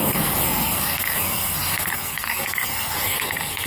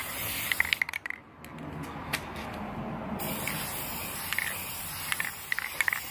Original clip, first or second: second